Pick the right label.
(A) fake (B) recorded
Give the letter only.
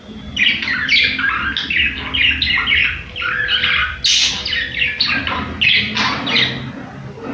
B